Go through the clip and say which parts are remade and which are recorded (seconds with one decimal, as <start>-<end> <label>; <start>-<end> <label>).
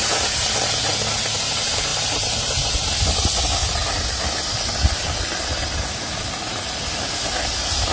0.0-0.9 remade; 0.9-1.9 recorded; 1.9-2.7 remade; 2.7-7.9 recorded